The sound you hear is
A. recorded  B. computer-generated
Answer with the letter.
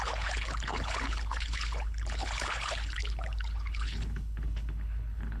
B